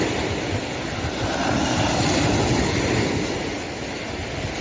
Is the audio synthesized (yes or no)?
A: no